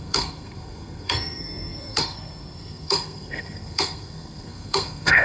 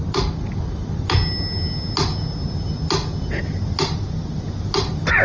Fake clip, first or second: first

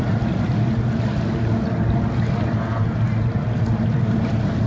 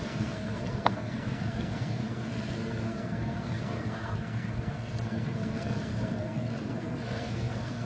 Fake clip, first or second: second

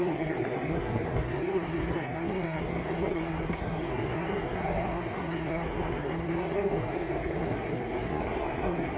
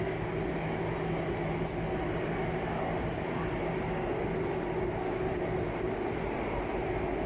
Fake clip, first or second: first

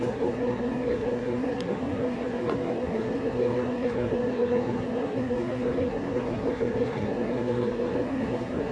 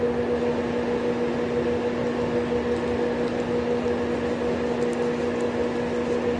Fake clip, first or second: first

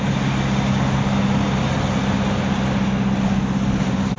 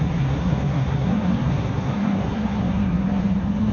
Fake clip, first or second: second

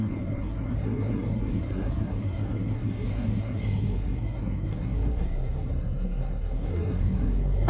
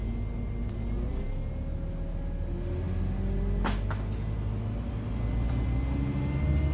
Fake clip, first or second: first